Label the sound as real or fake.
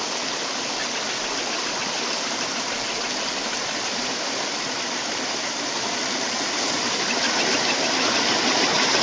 real